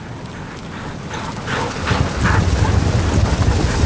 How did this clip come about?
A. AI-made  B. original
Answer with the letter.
B